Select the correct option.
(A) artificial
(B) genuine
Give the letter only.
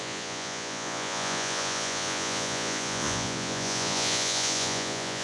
A